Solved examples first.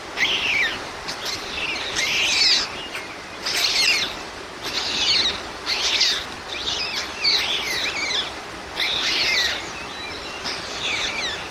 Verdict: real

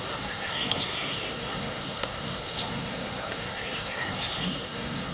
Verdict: fake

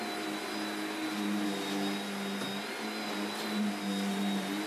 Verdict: real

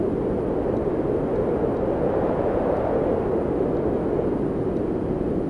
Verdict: real